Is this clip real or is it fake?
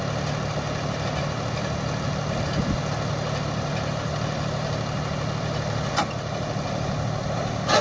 real